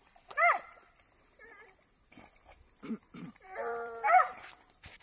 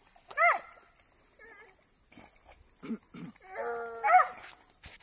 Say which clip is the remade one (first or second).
first